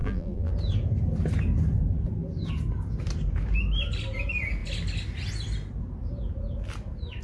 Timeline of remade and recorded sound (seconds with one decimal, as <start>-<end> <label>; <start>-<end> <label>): 0.0-0.5 remade; 0.5-7.2 recorded